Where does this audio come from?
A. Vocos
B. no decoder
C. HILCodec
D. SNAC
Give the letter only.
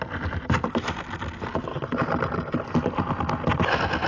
B